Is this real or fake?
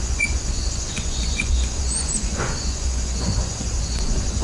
fake